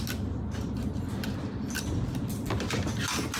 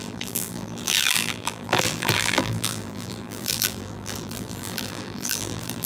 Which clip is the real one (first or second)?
first